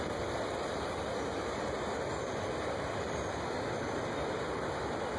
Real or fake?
real